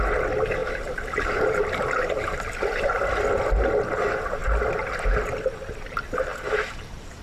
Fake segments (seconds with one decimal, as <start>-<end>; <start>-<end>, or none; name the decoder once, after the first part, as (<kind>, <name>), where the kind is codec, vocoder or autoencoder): 0.6-2.2 (vocoder, BigVGAN v2); 6.3-7.2